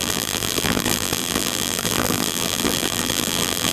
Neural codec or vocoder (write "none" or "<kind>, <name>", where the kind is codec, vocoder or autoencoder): vocoder, BigVGAN v2